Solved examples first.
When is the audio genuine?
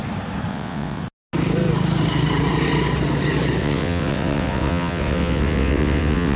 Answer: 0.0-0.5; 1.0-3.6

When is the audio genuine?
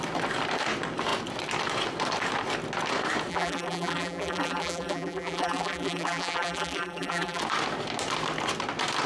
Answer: 0.0-3.3; 7.4-9.1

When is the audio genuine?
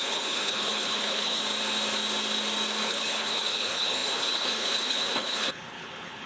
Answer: 1.4-2.8